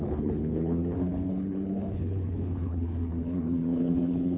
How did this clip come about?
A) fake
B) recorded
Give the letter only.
A